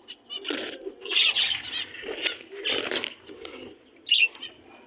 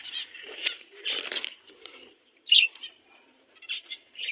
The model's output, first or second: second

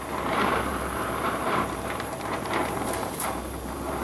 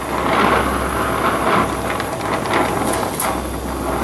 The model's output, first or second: first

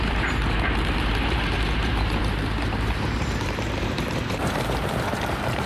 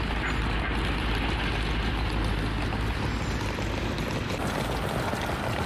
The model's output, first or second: first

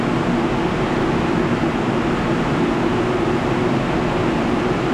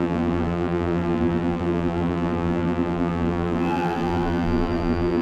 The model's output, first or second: second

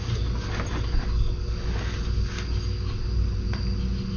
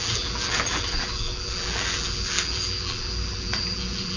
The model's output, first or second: second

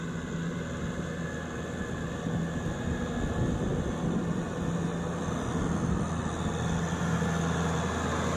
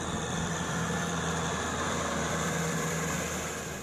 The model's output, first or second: second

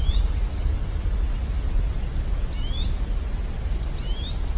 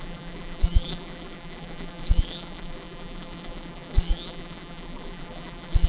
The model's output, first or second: second